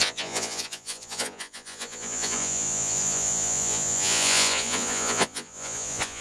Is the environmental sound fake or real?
fake